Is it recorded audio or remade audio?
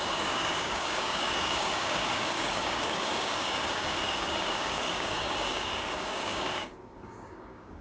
remade